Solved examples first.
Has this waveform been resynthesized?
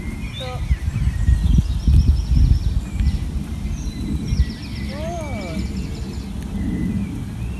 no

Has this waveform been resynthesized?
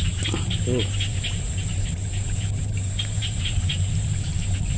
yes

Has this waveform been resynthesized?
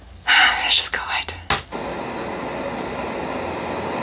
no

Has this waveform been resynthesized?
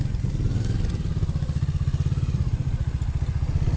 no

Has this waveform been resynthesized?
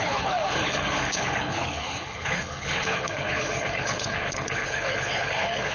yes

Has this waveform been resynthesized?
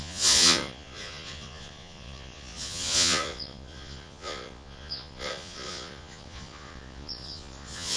yes